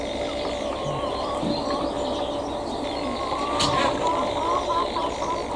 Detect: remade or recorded recorded